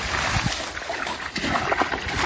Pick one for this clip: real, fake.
real